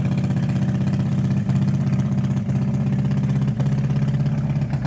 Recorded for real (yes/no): yes